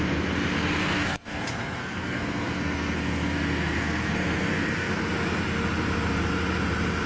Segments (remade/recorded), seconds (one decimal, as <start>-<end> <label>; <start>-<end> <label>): 0.0-0.8 recorded; 0.8-5.1 remade; 5.1-7.1 recorded